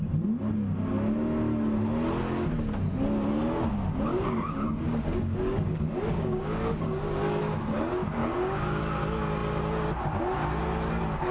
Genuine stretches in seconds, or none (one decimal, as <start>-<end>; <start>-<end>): 0.0-4.1; 7.4-8.2; 8.8-11.3